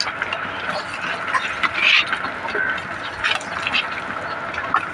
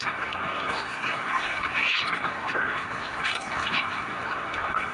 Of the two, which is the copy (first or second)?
second